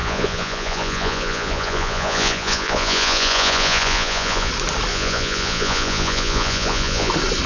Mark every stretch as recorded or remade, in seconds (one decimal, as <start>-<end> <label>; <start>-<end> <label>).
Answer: 0.0-4.5 remade; 4.5-4.9 recorded; 4.9-7.1 remade; 7.1-7.5 recorded